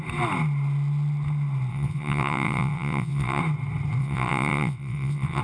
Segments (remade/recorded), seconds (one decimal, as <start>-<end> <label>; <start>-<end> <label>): 0.0-1.7 recorded; 1.7-3.4 remade; 3.4-4.0 recorded; 4.0-5.4 remade